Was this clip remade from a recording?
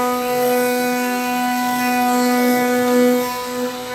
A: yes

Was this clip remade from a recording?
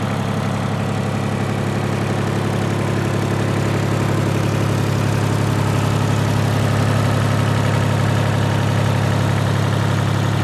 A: no